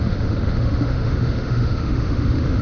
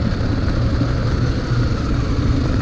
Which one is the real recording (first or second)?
second